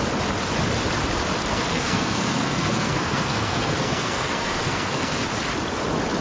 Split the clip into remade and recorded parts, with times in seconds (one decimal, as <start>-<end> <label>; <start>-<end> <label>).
0.0-1.5 recorded; 1.5-5.2 remade; 5.2-6.2 recorded